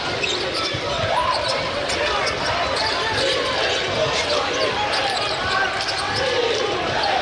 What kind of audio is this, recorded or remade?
recorded